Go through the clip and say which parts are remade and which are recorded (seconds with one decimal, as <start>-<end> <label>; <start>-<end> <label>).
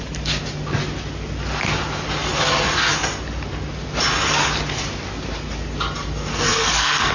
0.0-6.3 recorded; 6.3-7.1 remade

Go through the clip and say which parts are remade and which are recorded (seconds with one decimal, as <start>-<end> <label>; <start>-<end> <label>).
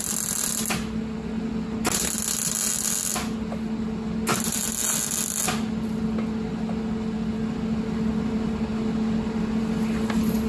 0.0-10.5 recorded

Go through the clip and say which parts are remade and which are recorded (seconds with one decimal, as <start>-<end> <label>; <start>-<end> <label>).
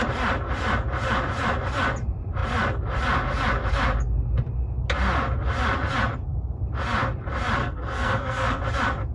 0.0-7.6 recorded; 7.6-8.6 remade; 8.6-9.1 recorded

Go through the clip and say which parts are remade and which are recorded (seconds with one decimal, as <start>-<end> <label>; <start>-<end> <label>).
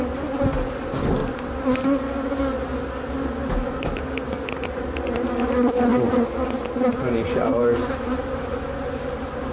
0.0-3.4 recorded; 3.4-4.5 remade; 4.5-9.5 recorded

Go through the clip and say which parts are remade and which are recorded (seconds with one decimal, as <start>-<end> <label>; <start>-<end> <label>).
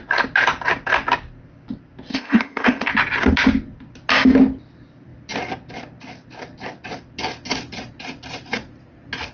0.0-2.1 recorded; 2.1-2.9 remade; 2.9-9.3 recorded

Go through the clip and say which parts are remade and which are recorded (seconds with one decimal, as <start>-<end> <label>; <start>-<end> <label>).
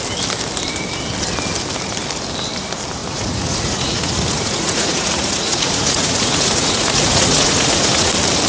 0.0-3.0 recorded; 3.0-8.1 remade; 8.1-8.5 recorded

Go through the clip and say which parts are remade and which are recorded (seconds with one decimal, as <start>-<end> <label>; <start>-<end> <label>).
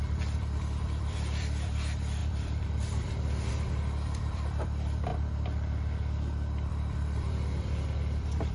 0.0-5.1 remade; 5.1-6.7 recorded; 6.7-8.5 remade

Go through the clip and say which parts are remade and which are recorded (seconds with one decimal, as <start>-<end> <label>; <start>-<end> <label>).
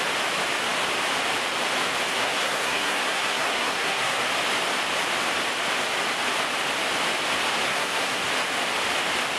0.0-2.1 recorded; 2.1-4.2 remade; 4.2-7.7 recorded; 7.7-8.3 remade; 8.3-9.4 recorded